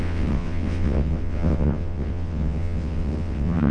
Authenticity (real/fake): fake